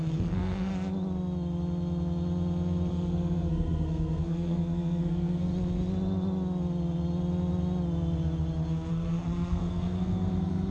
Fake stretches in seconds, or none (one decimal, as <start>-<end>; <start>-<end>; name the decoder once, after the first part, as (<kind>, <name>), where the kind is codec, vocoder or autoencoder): 0.0-0.7 (codec, SNAC); 2.9-5.5; 8.9-10.7